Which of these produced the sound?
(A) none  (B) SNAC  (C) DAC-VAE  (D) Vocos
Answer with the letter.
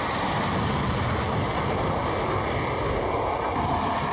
A